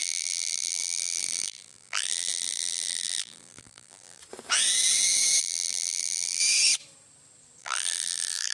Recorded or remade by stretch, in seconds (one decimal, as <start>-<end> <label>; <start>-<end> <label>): 0.0-4.2 remade; 4.2-5.4 recorded; 5.4-6.4 remade; 6.4-7.6 recorded; 7.6-8.5 remade